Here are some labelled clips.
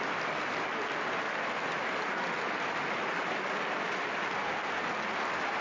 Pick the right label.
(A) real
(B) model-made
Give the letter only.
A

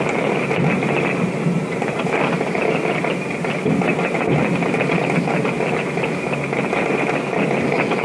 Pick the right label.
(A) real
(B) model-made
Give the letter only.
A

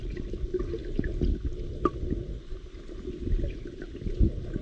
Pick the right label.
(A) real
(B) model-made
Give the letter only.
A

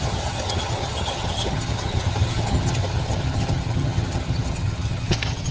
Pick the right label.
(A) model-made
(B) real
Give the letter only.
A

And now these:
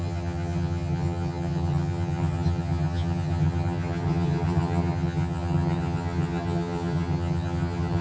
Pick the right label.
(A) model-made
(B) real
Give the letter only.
A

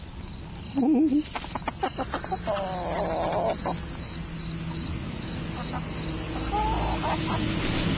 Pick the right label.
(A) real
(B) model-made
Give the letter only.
A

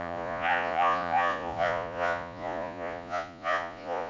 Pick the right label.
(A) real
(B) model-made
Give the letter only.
B